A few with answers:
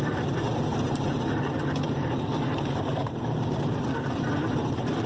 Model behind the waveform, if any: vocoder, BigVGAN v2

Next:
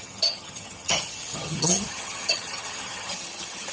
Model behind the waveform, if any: vocoder, HiFi-GAN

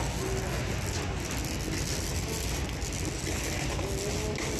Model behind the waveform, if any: none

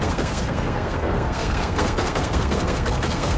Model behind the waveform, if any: codec, SNAC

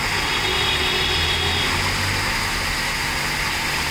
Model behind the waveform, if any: none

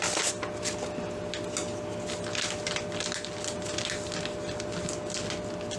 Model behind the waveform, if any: none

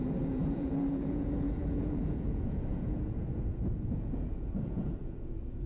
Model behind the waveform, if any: vocoder, Vocos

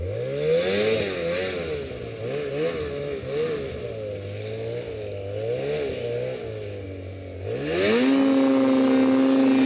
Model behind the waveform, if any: none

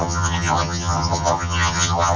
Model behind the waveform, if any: vocoder, HiFi-GAN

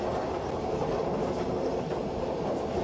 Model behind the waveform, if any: none